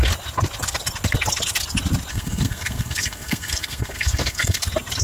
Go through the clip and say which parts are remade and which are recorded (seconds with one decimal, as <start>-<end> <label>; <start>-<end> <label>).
0.0-2.1 recorded; 2.1-4.6 remade; 4.6-5.0 recorded